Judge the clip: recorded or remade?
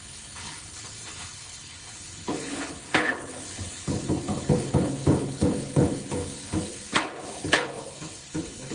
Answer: remade